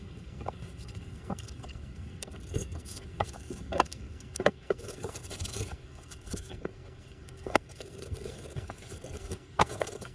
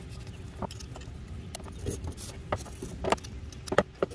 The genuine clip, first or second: second